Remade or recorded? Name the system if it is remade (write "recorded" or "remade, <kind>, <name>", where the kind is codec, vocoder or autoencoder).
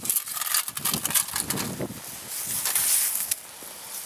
recorded